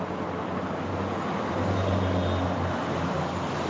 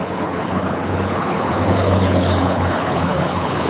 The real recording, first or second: first